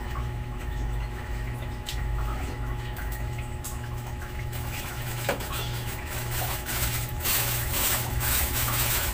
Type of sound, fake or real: fake